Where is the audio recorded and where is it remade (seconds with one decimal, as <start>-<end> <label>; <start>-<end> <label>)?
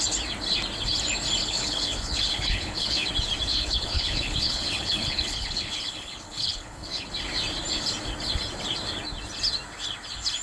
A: 0.0-1.4 recorded; 1.4-3.1 remade; 3.1-3.5 recorded; 3.5-7.1 remade; 7.1-10.4 recorded